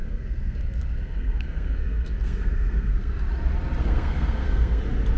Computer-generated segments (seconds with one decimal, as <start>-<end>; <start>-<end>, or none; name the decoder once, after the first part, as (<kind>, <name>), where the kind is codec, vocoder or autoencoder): 0.0-3.1 (codec, SNAC); 3.8-4.8